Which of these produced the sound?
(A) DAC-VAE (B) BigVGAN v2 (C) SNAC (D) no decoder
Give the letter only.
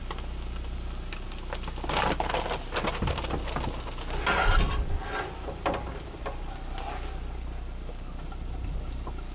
D